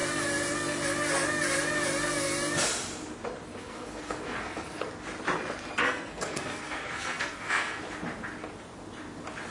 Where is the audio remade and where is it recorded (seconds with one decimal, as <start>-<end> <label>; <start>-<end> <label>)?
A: 0.0-3.6 recorded; 3.6-4.9 remade; 4.9-5.8 recorded; 5.8-7.8 remade; 7.8-9.5 recorded